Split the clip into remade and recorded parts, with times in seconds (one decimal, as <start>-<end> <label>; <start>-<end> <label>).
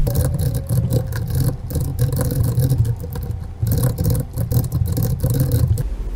0.0-6.2 recorded